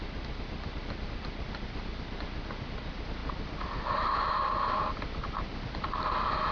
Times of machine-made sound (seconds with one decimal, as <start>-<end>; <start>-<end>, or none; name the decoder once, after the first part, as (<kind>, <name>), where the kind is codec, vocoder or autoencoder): none